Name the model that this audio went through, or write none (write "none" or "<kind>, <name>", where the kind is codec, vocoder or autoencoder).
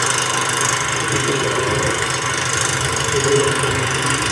none